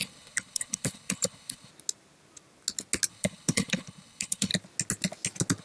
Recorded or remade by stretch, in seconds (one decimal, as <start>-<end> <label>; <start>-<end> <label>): 0.0-1.7 remade; 1.7-3.1 recorded; 3.1-4.5 remade; 4.5-5.6 recorded